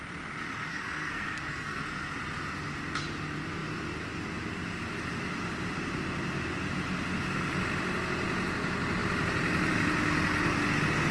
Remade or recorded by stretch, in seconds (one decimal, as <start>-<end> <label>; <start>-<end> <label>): 0.0-0.7 recorded; 0.7-1.8 remade; 1.8-11.1 recorded